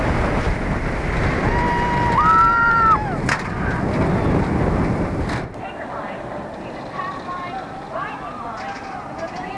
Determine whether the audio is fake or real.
real